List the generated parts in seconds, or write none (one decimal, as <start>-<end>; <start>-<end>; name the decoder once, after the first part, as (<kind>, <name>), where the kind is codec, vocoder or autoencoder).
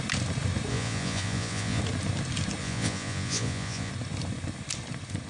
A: 0.7-1.8 (vocoder, Vocos); 2.6-3.9